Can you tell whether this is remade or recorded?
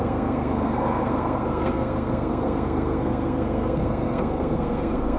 remade